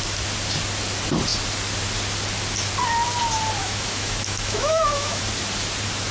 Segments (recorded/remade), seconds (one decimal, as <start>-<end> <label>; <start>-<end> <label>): 0.0-3.6 recorded; 3.6-5.2 remade; 5.2-6.1 recorded